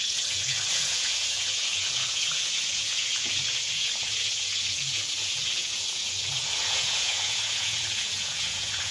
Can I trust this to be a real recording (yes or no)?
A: no